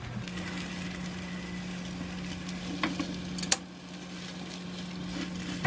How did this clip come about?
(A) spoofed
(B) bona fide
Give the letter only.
B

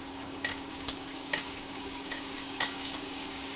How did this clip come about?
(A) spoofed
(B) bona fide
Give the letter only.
A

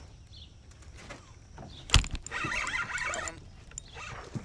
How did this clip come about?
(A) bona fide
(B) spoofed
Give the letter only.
A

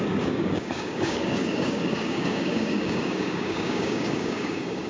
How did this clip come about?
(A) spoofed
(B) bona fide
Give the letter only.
A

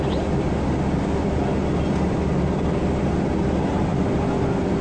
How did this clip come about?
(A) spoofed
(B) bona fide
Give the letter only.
B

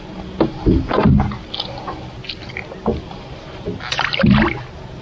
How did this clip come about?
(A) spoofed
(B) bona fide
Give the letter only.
B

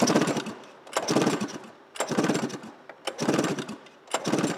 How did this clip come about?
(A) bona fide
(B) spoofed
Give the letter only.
A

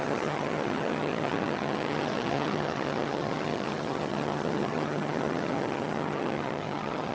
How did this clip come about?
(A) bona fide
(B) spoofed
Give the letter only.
B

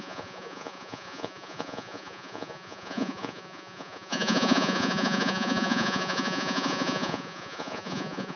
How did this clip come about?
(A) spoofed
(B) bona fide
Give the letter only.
A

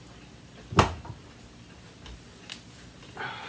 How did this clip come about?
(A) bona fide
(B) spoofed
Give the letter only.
A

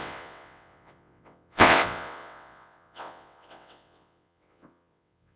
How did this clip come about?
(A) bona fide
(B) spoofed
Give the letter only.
B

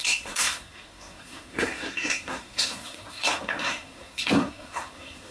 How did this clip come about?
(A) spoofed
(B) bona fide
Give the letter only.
A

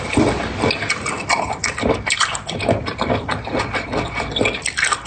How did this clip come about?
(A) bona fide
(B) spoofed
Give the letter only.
A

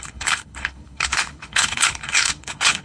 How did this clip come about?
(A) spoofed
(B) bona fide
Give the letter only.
A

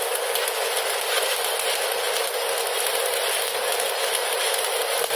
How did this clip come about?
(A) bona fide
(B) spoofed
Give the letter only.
A